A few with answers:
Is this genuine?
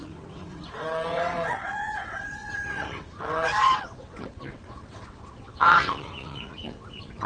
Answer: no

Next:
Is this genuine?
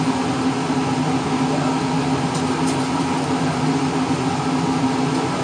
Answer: yes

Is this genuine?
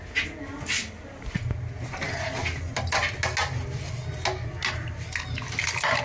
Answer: yes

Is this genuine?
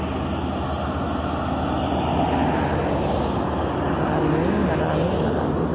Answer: yes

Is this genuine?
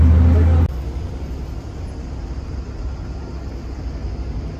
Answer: yes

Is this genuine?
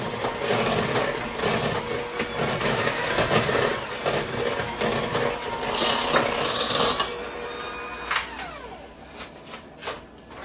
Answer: yes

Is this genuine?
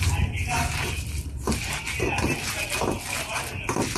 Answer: yes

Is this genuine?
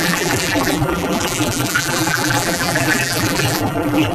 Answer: no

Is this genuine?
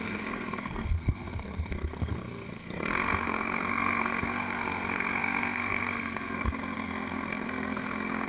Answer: no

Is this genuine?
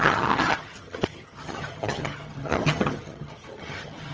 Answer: no